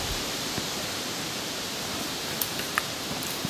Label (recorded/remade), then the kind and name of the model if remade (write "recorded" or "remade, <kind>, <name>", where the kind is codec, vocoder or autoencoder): remade, vocoder, BigVGAN v2